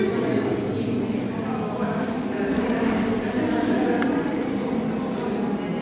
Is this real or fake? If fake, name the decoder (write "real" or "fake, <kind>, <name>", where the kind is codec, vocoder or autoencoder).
real